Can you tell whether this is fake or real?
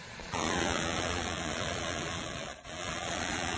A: fake